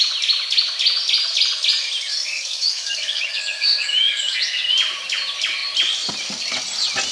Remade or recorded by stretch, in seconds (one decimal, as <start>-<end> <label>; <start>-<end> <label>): 0.0-2.1 recorded; 2.1-4.7 remade; 4.7-7.1 recorded